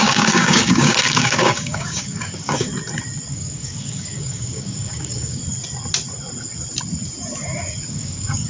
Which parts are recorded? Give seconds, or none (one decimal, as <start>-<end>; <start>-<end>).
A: 2.7-3.3; 5.4-7.9